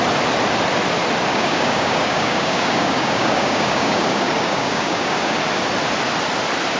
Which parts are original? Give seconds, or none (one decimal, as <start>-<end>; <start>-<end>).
0.0-1.3; 5.4-6.8